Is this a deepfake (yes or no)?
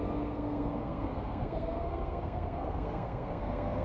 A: yes